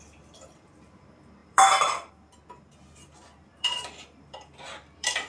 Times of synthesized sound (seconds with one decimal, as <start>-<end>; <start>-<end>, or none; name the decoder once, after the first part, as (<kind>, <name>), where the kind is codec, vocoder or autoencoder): 1.4-2.1 (vocoder, BigVGAN v2); 3.5-5.3